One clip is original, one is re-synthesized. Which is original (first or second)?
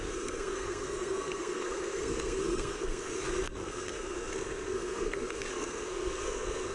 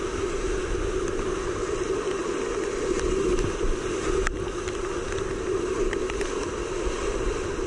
second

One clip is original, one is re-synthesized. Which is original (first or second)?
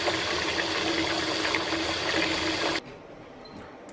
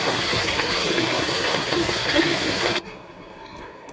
first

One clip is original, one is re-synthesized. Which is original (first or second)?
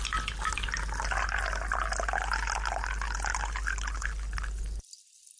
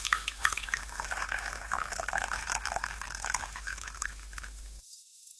first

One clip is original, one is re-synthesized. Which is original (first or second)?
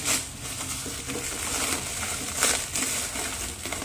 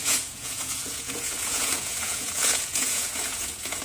first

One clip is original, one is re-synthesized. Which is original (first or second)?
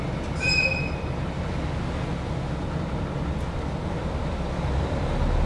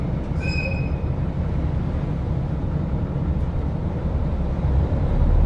first